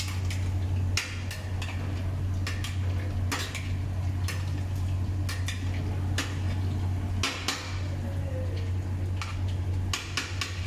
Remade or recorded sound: recorded